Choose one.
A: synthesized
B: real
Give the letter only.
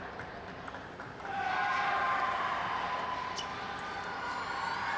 B